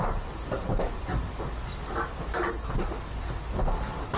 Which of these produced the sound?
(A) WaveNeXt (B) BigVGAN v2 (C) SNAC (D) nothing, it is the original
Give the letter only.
D